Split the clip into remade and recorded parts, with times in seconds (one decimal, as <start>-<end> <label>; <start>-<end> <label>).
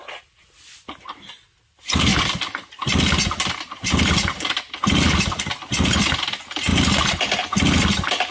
0.0-8.3 recorded